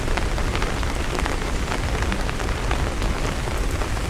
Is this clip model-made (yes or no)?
yes